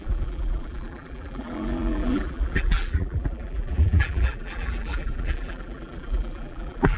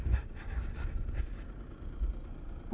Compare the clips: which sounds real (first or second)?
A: second